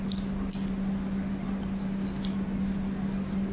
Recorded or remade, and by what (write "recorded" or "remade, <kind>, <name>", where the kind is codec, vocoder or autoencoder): recorded